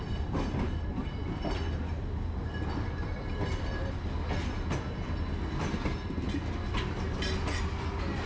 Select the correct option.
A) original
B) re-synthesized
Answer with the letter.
A